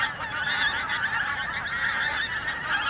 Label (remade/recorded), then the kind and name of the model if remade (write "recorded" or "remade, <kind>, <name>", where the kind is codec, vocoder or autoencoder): recorded